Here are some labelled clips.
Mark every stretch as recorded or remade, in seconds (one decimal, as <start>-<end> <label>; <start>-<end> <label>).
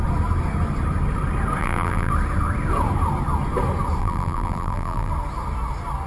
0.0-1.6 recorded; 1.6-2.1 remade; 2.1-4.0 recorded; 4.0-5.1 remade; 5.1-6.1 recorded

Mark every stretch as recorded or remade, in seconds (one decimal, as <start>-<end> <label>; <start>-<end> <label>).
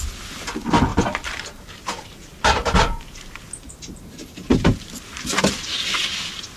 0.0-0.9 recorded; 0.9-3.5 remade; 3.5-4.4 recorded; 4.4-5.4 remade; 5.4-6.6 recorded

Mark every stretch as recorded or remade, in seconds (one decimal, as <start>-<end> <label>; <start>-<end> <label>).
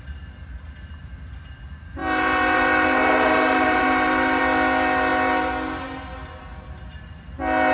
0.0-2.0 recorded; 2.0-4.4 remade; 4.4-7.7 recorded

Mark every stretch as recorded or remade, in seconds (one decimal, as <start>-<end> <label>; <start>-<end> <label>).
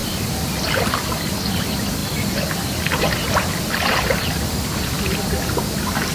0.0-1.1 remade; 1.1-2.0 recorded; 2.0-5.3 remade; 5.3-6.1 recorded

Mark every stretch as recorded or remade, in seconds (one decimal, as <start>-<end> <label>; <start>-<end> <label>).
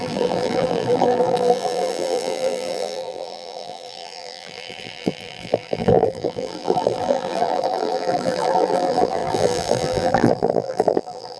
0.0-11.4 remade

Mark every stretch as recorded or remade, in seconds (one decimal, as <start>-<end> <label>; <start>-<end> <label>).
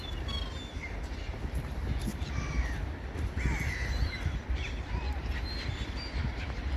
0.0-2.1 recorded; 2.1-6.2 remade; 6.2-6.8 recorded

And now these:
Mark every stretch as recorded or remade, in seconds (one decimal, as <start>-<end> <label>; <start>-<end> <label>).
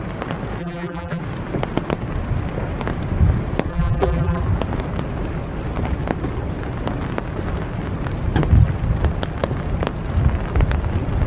0.0-0.6 recorded; 0.6-1.2 remade; 1.2-3.7 recorded; 3.7-4.4 remade; 4.4-11.3 recorded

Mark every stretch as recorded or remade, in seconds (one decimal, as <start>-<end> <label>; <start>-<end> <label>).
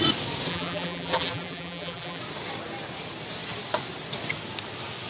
0.0-0.5 recorded; 0.5-2.2 remade; 2.2-5.1 recorded